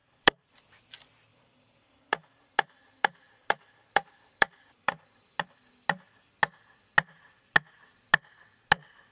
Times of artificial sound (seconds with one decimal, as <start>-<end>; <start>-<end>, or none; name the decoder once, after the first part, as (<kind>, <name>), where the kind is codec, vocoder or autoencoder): 0.0-0.5 (vocoder, BigVGAN v2); 1.3-5.4

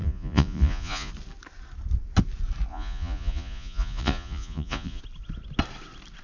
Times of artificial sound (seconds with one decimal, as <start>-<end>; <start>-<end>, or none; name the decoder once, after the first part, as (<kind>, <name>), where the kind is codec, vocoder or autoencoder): 0.0-1.1 (vocoder, Vocos); 2.7-5.0

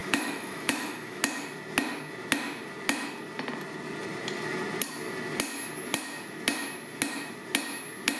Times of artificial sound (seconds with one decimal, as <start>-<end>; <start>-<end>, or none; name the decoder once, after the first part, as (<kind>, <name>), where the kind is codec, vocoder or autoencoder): 0.0-1.2 (autoencoder, DAC-VAE)

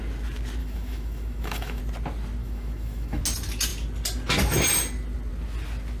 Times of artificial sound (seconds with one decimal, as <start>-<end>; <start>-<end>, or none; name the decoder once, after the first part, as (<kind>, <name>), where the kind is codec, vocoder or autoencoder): 0.6-1.8 (autoencoder, DAC-VAE); 2.4-3.2

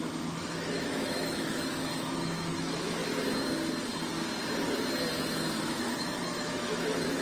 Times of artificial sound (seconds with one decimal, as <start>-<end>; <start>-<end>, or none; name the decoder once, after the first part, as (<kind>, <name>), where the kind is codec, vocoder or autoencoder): 0.0-3.0 (autoencoder, DAC-VAE); 5.6-7.2

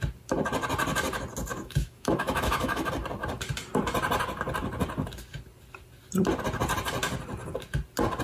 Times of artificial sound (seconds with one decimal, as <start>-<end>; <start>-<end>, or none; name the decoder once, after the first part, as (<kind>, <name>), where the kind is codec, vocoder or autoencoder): 1.5-2.9 (autoencoder, DAC-VAE)

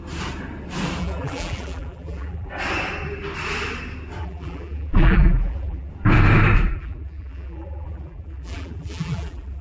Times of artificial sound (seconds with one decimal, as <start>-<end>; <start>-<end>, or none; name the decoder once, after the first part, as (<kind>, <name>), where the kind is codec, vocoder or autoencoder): 1.0-2.5 (vocoder, BigVGAN v2); 4.2-5.9; 6.7-9.6

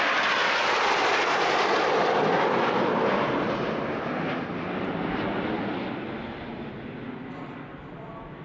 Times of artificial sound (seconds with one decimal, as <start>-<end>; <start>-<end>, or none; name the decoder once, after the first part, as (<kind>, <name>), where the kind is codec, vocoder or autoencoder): none